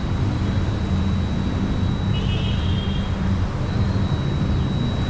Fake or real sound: real